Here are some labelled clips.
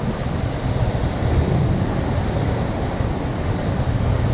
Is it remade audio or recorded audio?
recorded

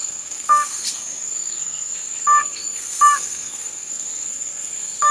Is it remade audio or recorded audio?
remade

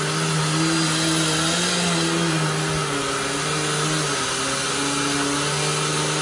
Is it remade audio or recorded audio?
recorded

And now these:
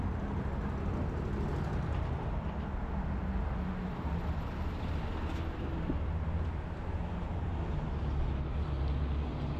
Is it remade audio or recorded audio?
recorded